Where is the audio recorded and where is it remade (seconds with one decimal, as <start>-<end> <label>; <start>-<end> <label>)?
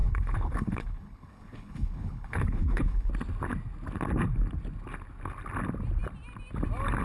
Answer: 0.0-3.1 remade; 3.1-7.0 recorded